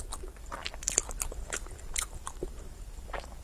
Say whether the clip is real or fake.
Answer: fake